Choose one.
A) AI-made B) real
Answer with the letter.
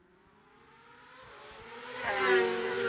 B